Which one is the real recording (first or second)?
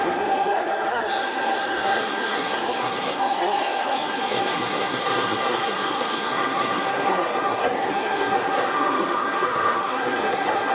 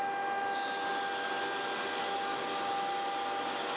second